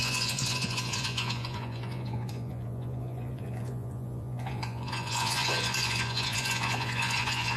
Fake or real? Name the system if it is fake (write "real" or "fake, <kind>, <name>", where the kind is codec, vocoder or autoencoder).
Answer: fake, vocoder, Vocos